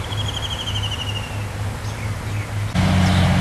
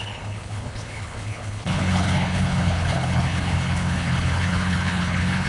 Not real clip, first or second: second